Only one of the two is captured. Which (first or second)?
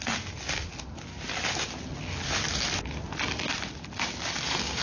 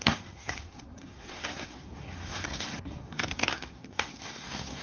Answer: first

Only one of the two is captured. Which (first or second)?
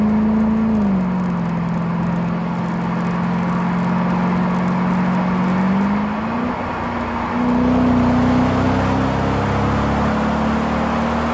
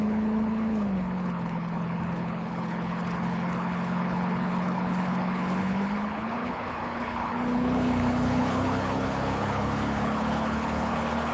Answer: first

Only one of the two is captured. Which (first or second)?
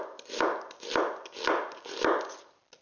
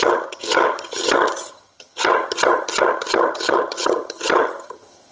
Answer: first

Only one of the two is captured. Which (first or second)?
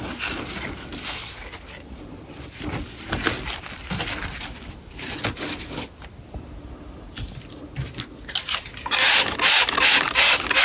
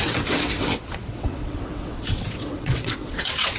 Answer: first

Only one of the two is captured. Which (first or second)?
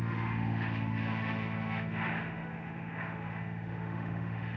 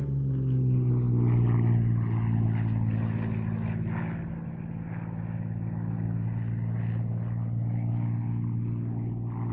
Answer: second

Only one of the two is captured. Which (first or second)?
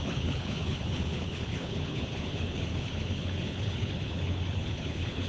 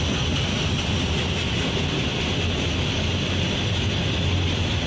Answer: second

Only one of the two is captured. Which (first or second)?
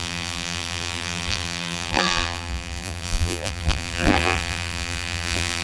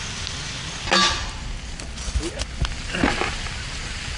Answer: second